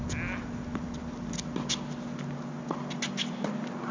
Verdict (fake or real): real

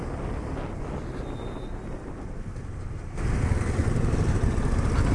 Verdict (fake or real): real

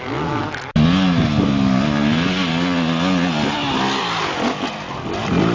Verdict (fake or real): real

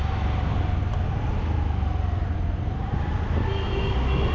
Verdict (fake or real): real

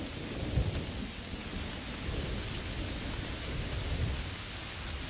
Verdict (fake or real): real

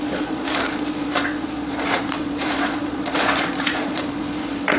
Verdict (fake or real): fake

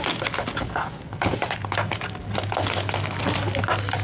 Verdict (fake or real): real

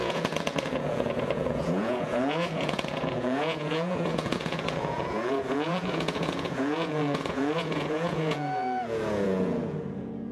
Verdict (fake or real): fake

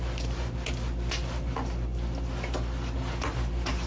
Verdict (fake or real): real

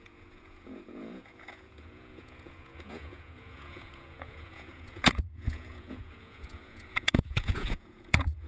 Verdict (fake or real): fake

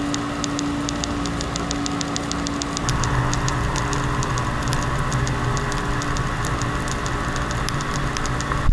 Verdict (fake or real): real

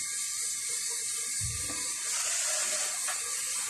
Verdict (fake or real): real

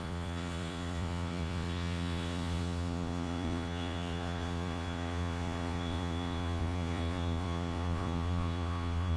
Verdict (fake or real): fake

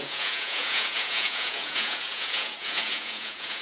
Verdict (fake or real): fake